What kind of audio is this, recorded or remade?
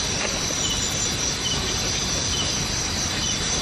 recorded